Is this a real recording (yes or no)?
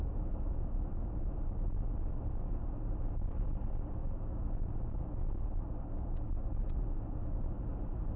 yes